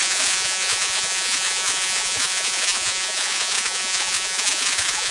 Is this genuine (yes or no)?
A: no